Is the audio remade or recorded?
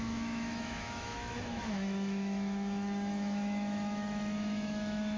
remade